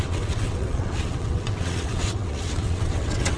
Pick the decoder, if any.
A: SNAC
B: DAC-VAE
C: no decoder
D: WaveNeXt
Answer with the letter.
D